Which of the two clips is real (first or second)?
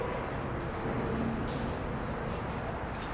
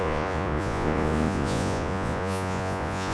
first